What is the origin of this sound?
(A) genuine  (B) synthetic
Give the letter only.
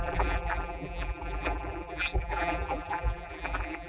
B